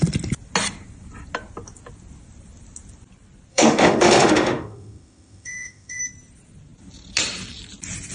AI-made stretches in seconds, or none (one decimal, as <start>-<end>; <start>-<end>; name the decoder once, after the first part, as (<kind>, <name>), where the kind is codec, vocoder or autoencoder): 3.5-6.0 (autoencoder, DAC-VAE)